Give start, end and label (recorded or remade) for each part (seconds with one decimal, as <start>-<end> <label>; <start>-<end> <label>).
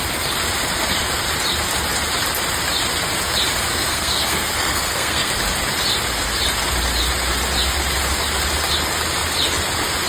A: 0.0-3.7 recorded; 3.7-5.3 remade; 5.3-10.1 recorded